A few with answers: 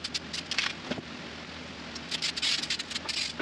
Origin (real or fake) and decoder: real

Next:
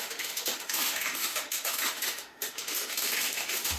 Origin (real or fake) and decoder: fake, autoencoder, DAC-VAE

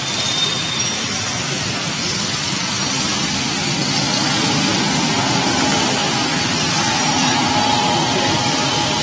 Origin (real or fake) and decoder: real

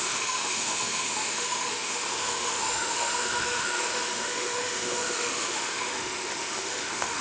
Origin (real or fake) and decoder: fake, autoencoder, DAC-VAE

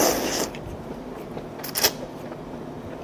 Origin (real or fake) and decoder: real